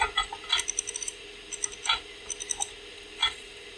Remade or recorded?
recorded